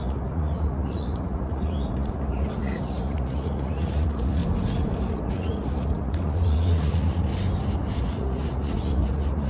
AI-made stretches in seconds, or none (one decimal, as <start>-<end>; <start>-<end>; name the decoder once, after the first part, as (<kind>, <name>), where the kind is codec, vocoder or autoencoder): 0.0-4.4 (vocoder, Vocos); 5.0-7.3; 8.0-9.5